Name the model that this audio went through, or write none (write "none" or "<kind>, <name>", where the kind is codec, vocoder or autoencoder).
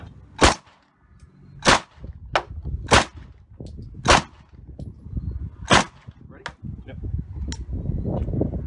none